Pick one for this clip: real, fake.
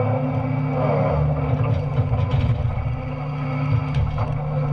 real